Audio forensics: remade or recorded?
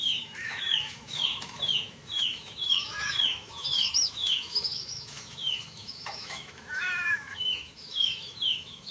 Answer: remade